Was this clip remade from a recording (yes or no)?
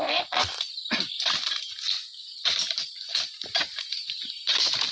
no